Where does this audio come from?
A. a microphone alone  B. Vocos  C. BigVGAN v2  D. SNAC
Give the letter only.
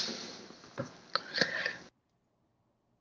A